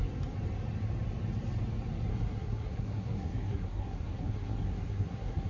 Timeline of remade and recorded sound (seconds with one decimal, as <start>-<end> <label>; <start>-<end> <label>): 0.0-2.1 recorded; 2.1-5.5 remade